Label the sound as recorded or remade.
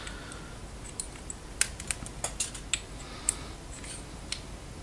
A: recorded